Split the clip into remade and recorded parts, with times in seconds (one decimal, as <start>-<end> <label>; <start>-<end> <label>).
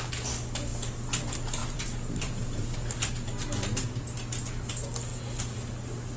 0.0-1.6 recorded; 1.6-3.1 remade; 3.1-6.2 recorded